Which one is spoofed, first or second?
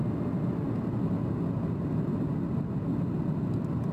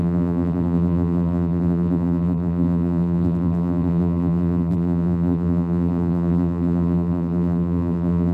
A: second